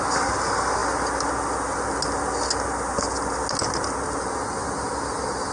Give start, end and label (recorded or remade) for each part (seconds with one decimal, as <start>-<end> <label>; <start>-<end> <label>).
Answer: 0.0-5.5 recorded